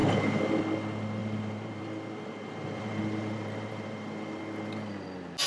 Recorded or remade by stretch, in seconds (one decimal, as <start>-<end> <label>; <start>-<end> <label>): 0.0-0.6 remade; 0.6-1.2 recorded; 1.2-4.4 remade; 4.4-5.5 recorded